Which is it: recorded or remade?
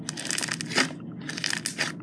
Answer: recorded